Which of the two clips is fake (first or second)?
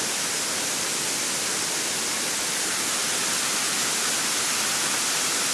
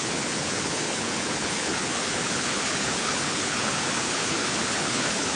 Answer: second